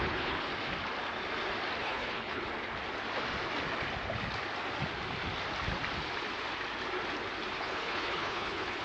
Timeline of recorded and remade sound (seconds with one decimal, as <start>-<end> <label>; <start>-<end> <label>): 0.0-0.5 remade; 0.5-1.8 recorded; 1.8-2.4 remade; 2.4-7.6 recorded; 7.6-8.8 remade